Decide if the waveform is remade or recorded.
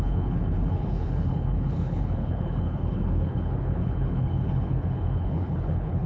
remade